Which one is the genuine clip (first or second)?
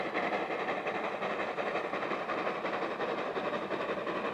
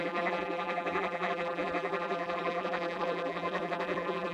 first